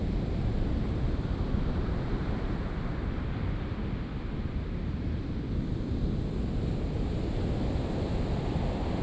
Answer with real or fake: real